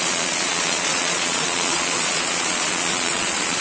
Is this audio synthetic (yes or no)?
yes